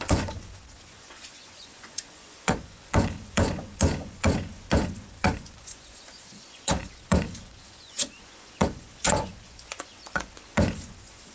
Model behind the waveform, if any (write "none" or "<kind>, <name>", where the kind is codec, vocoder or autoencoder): vocoder, Vocos